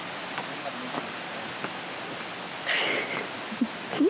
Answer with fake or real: real